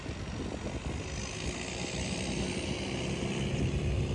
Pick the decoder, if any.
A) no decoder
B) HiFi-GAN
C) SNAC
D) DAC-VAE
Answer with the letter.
A